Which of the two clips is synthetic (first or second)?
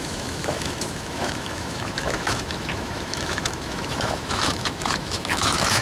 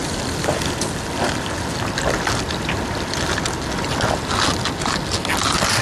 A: first